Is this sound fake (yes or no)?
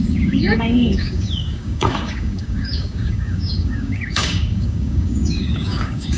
yes